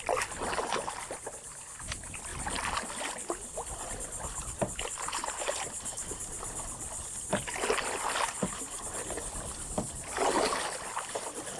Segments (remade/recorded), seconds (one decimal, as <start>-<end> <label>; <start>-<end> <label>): 0.0-11.6 recorded